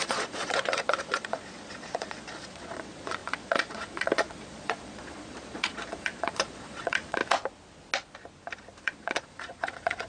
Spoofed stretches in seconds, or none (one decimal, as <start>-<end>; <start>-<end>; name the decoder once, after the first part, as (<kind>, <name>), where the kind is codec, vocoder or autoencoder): 0.0-7.2 (vocoder, Vocos); 8.8-10.1